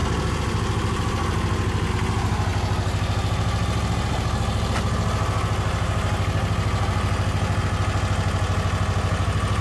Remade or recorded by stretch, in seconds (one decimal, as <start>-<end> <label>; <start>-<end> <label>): 0.0-1.9 remade; 1.9-9.6 recorded